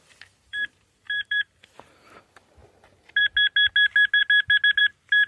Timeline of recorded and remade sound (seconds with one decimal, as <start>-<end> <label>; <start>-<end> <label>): 0.0-0.5 recorded; 0.5-1.4 remade; 1.4-5.3 recorded